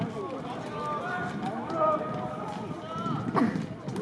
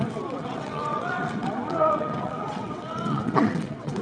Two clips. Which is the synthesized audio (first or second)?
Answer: second